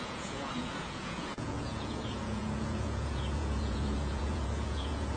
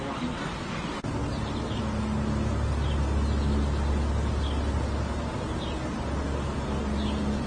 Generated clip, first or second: first